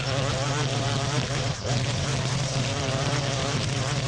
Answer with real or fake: fake